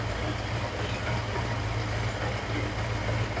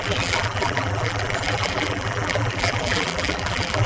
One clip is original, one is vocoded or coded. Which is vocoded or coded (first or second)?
second